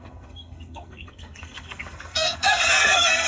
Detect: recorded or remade remade